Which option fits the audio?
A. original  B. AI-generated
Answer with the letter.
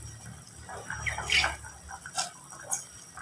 A